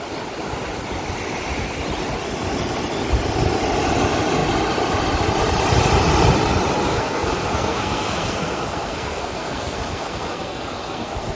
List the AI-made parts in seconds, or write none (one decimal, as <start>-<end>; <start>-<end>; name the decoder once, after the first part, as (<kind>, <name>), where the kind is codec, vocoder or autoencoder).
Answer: 6.8-11.4 (codec, SNAC)

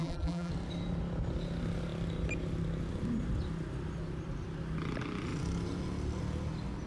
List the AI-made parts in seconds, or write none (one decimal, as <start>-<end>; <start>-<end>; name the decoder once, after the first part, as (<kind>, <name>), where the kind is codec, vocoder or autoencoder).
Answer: 0.0-0.5 (vocoder, BigVGAN v2)

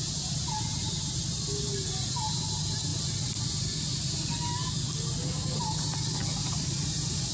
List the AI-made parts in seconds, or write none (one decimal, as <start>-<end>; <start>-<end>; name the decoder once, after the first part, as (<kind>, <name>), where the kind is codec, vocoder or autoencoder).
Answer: 6.4-7.3 (vocoder, BigVGAN v2)

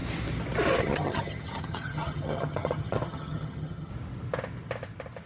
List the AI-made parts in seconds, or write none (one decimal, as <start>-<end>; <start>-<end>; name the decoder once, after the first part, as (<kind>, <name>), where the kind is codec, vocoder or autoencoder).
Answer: 0.8-3.9 (vocoder, HiFi-GAN)

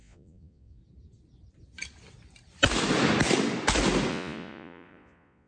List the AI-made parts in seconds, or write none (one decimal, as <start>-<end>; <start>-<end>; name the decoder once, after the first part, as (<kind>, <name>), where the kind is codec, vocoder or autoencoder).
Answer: 0.0-0.8 (vocoder, Vocos); 4.1-5.5

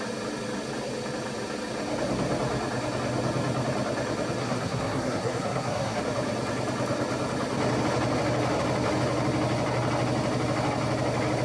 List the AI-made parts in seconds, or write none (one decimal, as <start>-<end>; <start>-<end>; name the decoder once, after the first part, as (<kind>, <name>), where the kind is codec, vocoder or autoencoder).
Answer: 4.4-6.0 (codec, SNAC)

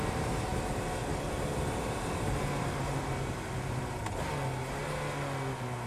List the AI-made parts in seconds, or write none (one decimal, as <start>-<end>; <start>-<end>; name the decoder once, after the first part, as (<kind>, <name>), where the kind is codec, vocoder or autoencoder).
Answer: none

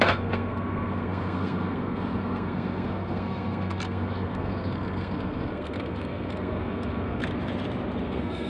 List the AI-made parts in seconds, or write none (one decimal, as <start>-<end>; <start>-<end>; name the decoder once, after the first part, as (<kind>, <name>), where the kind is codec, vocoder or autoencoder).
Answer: 0.0-7.2 (codec, SNAC); 8.0-8.5